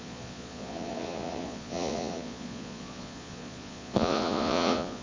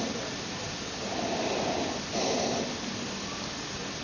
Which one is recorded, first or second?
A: second